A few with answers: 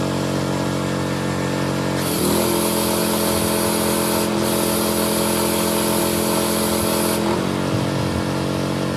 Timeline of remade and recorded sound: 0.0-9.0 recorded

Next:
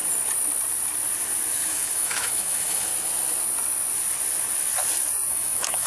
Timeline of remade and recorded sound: 0.0-1.5 recorded; 1.5-2.9 remade; 2.9-5.3 recorded; 5.3-5.9 remade

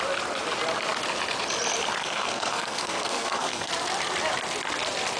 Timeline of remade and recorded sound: 0.0-2.0 recorded; 2.0-3.7 remade; 3.7-5.2 recorded